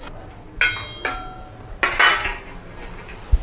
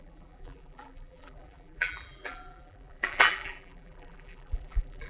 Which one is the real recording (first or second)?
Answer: first